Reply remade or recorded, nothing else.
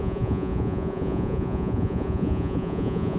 remade